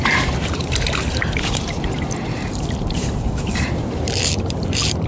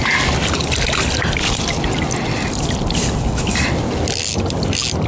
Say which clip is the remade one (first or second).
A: first